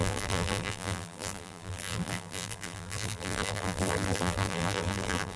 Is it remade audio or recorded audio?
remade